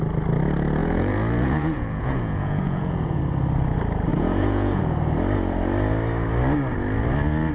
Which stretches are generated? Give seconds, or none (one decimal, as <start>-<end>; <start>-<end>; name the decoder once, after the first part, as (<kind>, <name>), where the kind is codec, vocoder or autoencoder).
0.8-3.2 (vocoder, Vocos); 4.1-4.8